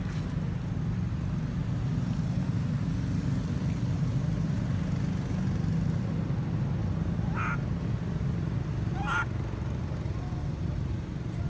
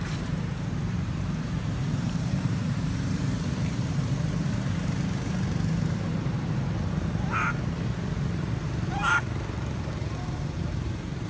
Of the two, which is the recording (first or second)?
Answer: first